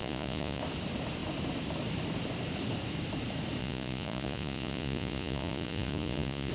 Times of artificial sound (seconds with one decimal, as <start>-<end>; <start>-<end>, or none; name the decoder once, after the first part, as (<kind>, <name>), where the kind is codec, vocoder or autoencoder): 0.0-0.6 (vocoder, Vocos); 3.6-6.5